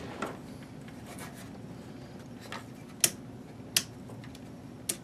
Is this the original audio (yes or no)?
yes